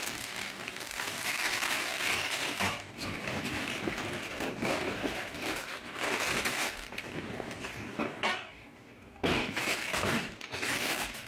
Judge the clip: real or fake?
fake